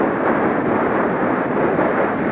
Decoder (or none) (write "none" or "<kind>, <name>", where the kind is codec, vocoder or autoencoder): none